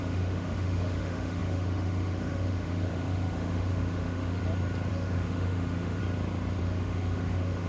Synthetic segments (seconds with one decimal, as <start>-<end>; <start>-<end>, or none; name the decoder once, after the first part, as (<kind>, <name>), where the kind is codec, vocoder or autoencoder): 0.0-4.4 (autoencoder, DAC-VAE); 4.9-6.0; 6.6-7.7